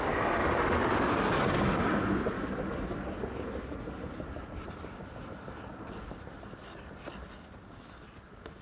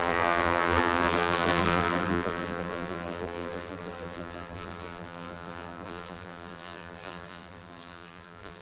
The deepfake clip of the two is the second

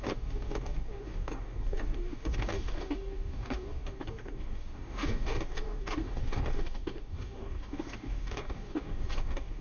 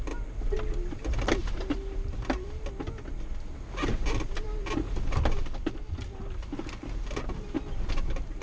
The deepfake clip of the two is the first